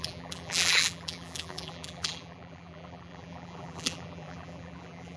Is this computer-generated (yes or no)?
yes